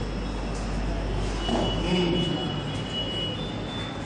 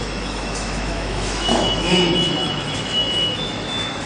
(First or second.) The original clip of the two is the first